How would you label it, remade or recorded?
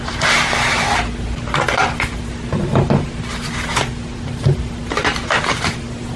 recorded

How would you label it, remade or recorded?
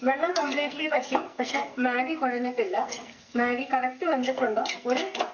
remade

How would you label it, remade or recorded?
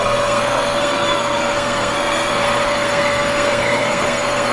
remade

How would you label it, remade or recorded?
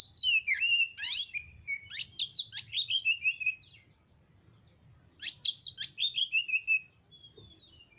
recorded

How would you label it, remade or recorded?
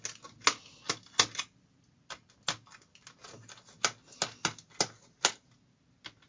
recorded